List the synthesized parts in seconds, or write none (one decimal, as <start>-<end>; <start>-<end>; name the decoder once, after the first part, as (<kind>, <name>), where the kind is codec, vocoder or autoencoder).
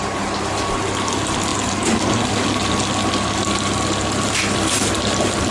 none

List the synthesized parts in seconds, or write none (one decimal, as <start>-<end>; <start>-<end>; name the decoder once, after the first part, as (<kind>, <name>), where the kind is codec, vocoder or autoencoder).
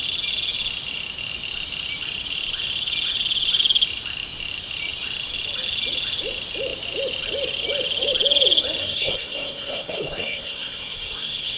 8.8-11.6 (codec, SNAC)